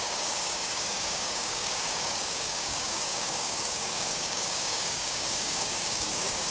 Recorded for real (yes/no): no